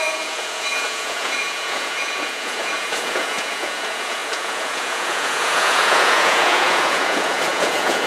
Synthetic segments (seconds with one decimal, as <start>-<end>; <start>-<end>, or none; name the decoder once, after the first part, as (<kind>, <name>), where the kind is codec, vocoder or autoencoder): 0.0-8.1 (vocoder, Vocos)